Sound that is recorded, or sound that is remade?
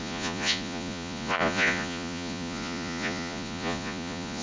remade